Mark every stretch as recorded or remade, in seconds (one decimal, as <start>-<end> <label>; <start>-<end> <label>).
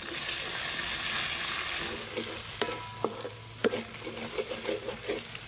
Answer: 0.0-5.5 recorded